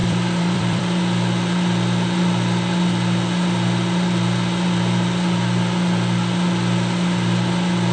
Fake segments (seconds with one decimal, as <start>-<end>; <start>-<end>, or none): 0.0-0.8